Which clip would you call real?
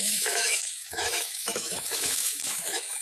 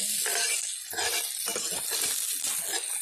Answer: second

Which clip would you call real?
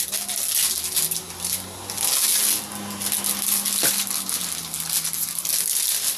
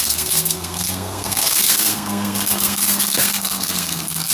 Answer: first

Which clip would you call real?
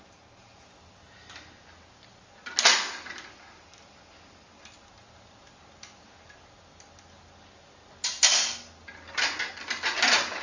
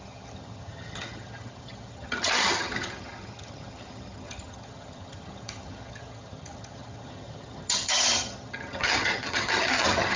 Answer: first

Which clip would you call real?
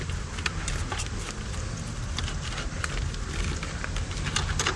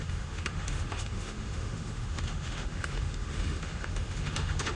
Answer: first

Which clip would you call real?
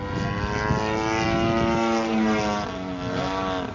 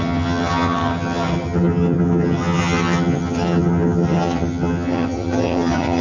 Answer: first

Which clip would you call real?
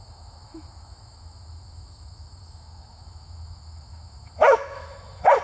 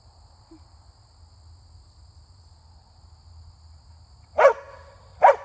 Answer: second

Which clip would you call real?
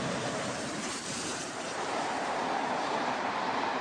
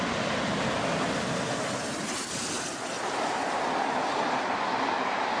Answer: second